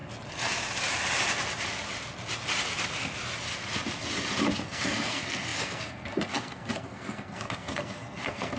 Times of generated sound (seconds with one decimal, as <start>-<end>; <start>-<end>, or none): 4.5-8.6